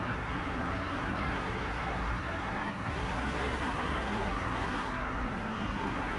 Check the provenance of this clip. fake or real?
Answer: fake